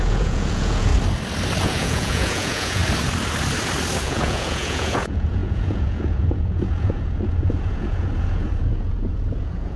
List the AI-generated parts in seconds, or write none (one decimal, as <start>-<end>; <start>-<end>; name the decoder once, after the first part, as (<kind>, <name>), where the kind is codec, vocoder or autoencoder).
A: 0.0-0.9 (vocoder, Vocos); 1.6-2.8; 4.0-9.8